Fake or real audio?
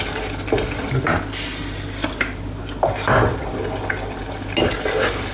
real